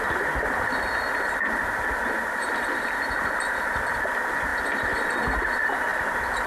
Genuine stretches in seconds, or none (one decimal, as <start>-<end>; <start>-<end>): 0.0-6.5